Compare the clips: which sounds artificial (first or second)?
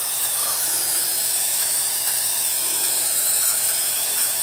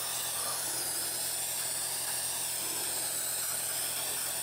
first